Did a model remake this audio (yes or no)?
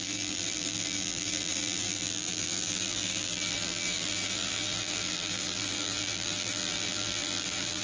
yes